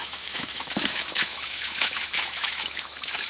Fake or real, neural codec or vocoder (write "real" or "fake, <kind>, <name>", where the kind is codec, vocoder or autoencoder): fake, autoencoder, DAC-VAE